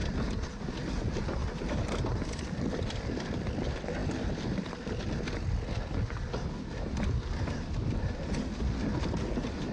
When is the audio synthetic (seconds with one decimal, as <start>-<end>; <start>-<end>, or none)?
none